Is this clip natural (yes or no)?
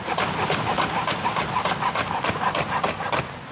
yes